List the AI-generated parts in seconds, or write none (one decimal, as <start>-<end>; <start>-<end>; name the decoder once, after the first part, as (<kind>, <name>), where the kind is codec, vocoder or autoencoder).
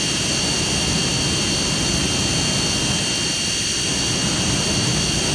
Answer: 0.0-1.1 (vocoder, BigVGAN v2); 4.3-5.3